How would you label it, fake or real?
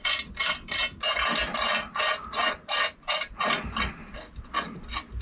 real